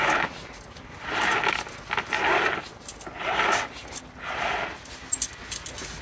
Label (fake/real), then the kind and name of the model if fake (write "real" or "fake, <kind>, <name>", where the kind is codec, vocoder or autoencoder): real